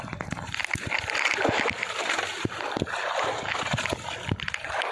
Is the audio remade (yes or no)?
no